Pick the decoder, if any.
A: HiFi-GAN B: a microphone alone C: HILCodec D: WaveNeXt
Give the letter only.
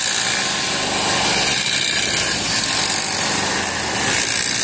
B